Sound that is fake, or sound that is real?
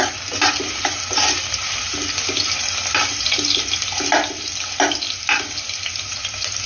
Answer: real